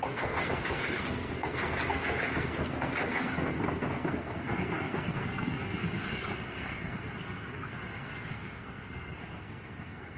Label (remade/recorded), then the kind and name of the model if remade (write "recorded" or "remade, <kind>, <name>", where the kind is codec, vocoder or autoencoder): remade, codec, SNAC